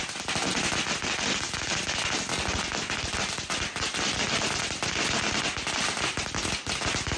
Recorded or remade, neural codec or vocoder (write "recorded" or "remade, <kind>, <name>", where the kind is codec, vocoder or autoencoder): recorded